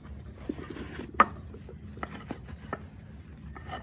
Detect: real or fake real